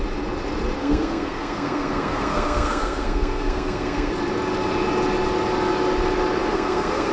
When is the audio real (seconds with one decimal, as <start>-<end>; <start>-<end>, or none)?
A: 0.0-0.8; 4.1-6.4